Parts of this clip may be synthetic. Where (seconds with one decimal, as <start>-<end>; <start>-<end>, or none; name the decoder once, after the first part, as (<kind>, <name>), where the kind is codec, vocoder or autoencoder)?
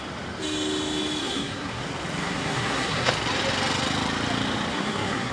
1.2-1.8 (codec, SNAC); 2.2-3.1; 4.7-5.3